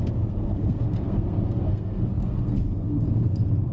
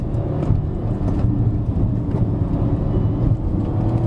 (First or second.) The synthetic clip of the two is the first